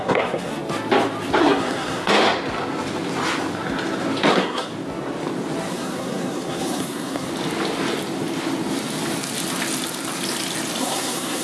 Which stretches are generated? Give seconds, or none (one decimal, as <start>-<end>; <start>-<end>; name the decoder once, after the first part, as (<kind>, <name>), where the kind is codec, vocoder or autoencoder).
0.0-0.5 (codec, SNAC); 1.4-2.1; 4.3-4.7; 5.7-7.3; 10.8-11.4